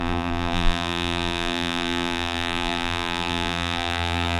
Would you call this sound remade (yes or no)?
yes